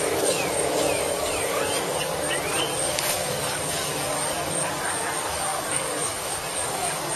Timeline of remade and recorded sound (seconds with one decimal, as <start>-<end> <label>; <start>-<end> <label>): 0.0-2.1 remade; 2.1-2.6 recorded; 2.6-7.2 remade